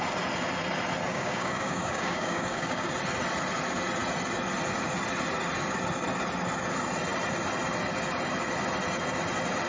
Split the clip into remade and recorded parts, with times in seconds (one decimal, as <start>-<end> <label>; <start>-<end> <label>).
0.0-1.1 recorded; 1.1-2.9 remade; 2.9-9.7 recorded